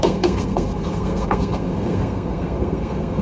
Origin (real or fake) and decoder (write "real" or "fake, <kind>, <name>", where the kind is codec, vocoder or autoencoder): fake, codec, SNAC